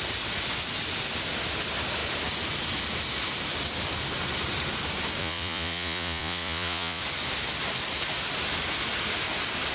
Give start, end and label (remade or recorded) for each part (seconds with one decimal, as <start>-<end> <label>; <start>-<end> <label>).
0.0-5.2 recorded; 5.2-7.0 remade; 7.0-9.7 recorded